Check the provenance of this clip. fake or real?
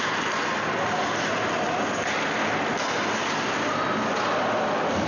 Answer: real